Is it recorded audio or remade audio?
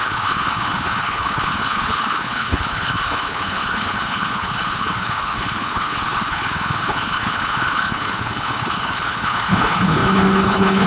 remade